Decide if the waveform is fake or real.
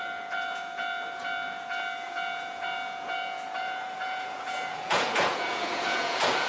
fake